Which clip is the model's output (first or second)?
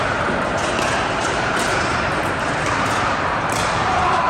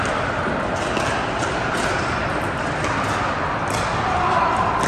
first